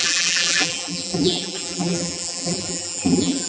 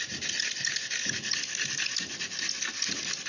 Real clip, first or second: second